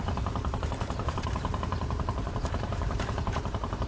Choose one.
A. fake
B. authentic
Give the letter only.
A